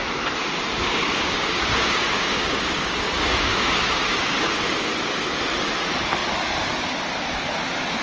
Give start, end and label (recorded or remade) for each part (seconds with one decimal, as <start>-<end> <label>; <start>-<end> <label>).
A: 0.0-0.8 recorded; 0.8-4.7 remade; 4.7-8.0 recorded